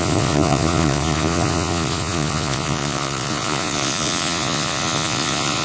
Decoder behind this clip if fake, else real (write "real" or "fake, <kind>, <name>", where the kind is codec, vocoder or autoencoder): fake, vocoder, Vocos